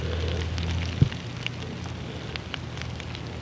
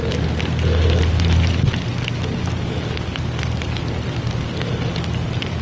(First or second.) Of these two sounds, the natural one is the first